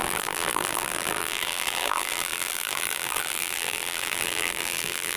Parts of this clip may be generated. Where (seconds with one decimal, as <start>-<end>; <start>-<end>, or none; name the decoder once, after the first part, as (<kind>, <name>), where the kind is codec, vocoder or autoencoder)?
0.0-5.2 (vocoder, BigVGAN v2)